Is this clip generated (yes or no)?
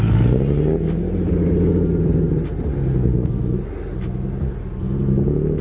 no